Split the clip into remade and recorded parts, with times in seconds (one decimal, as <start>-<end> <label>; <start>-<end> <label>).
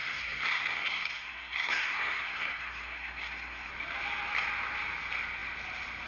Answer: 0.0-3.7 remade; 3.7-6.1 recorded